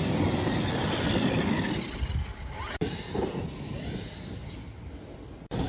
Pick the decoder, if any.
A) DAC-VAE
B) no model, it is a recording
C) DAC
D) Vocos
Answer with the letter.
B